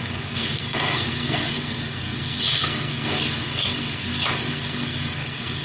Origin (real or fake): fake